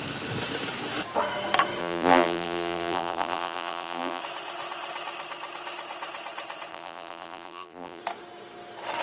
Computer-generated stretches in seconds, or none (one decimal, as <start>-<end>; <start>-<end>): 1.8-4.2; 6.7-8.0